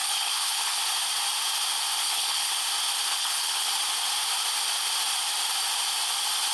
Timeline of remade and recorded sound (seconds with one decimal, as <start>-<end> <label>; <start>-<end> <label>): 0.0-0.8 remade; 0.8-2.0 recorded; 2.0-2.5 remade; 2.5-3.1 recorded; 3.1-3.7 remade; 3.7-6.5 recorded